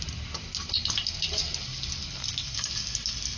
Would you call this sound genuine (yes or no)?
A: yes